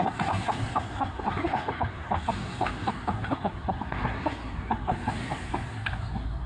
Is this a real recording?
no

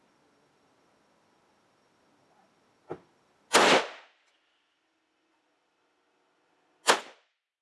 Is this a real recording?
yes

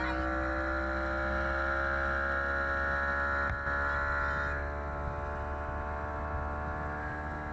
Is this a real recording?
yes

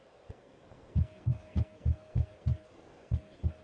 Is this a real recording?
no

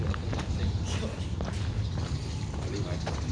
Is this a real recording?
yes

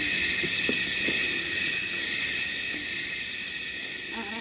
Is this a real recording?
yes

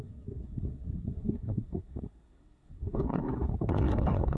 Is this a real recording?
no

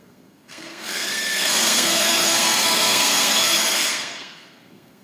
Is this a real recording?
no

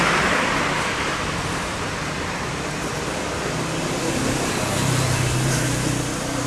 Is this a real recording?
yes